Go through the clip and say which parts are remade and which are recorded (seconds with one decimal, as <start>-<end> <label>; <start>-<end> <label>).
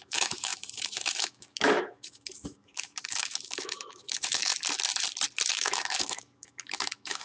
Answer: 0.0-4.5 remade; 4.5-5.5 recorded; 5.5-7.2 remade